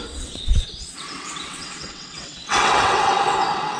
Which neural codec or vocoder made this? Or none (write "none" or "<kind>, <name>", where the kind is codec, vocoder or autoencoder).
vocoder, WaveNeXt